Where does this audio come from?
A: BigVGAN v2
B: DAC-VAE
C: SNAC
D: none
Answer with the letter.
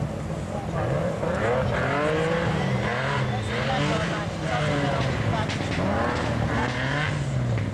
D